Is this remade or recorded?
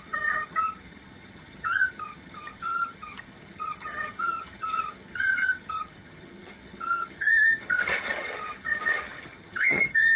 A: remade